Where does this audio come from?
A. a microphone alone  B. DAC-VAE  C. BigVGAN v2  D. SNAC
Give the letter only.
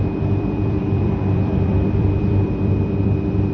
C